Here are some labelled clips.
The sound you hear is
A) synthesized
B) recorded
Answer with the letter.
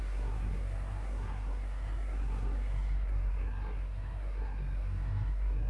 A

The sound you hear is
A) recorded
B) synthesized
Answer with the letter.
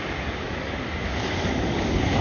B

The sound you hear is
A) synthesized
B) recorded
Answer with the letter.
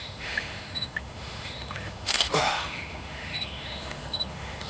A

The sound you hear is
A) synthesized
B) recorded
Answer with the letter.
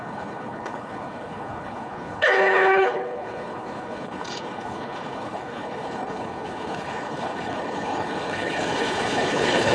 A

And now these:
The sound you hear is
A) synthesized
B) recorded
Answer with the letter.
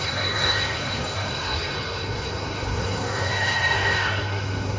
A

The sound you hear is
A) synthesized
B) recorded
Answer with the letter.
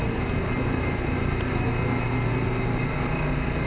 B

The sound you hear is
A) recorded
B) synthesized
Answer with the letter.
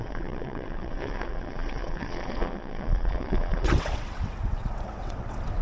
B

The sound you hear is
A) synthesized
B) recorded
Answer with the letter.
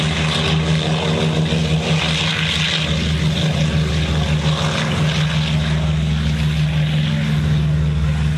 B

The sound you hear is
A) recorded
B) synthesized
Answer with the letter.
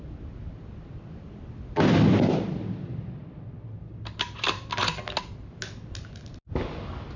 A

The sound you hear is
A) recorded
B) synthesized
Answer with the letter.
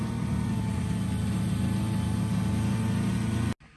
A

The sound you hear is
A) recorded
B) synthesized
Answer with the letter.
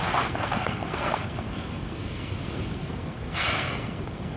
B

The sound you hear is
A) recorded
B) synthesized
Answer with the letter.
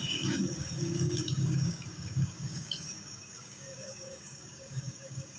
B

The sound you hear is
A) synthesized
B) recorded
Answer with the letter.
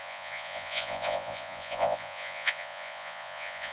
A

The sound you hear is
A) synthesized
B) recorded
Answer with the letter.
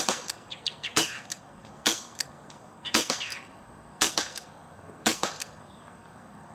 A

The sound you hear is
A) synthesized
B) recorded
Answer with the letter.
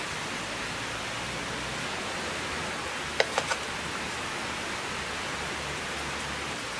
B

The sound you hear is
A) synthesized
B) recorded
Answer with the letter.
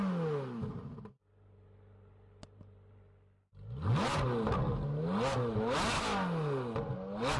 B